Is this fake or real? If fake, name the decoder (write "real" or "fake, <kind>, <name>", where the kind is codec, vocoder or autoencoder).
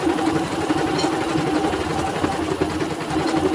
real